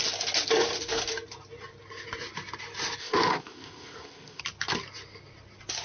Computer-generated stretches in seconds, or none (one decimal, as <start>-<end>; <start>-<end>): 3.0-4.4

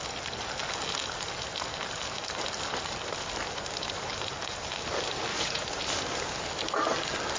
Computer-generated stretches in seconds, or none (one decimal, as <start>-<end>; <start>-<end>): 5.3-5.8

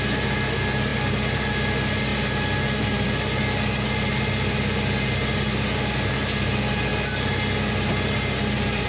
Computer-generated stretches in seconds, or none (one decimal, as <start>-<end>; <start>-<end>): none

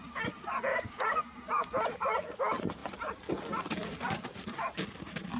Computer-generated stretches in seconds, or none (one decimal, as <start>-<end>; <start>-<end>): 0.7-1.2

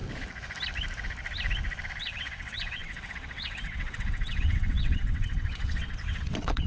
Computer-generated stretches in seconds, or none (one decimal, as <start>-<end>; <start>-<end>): 2.0-6.7